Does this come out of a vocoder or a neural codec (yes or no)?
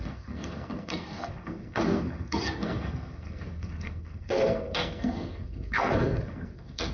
yes